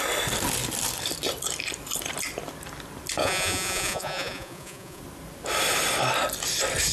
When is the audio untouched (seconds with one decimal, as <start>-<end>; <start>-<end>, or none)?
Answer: 0.0-3.2; 5.0-6.9